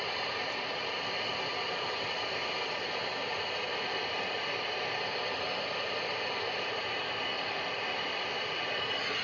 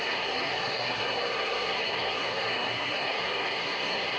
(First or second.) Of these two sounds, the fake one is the second